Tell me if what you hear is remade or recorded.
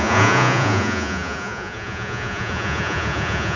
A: remade